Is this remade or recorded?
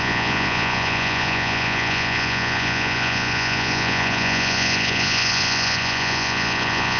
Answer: remade